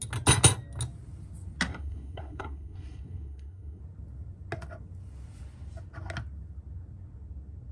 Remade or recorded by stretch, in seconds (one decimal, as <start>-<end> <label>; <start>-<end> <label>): 0.0-1.7 recorded; 1.7-3.8 remade; 3.8-7.7 recorded